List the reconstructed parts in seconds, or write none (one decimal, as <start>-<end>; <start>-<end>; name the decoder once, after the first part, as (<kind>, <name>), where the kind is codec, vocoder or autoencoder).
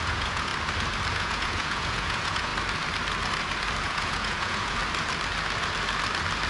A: 0.0-0.5 (vocoder, Vocos); 1.1-2.5; 3.8-4.8